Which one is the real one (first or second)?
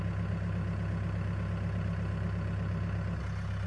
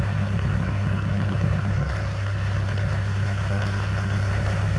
first